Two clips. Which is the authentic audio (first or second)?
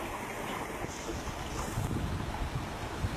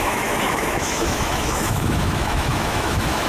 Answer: first